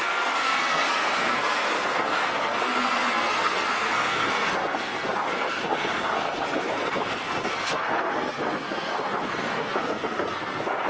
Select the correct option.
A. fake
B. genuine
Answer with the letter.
A